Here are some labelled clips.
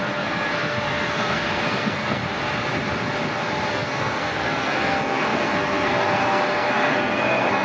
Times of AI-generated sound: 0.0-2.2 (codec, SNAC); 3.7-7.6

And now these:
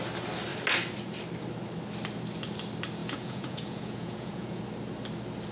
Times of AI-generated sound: 3.0-4.6 (vocoder, Vocos)

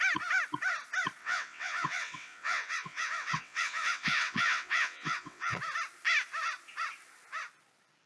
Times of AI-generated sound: 1.2-5.6 (vocoder, WaveNeXt)

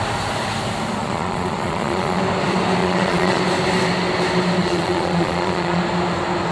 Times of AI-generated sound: 1.0-2.2 (vocoder, Vocos); 2.8-3.4; 4.6-5.8

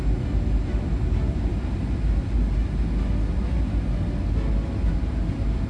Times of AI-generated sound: none

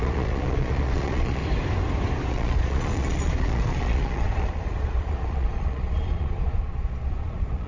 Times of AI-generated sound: 0.0-1.4 (vocoder, Vocos); 2.3-7.7